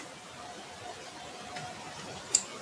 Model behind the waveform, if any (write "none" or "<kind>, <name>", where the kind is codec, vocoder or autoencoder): none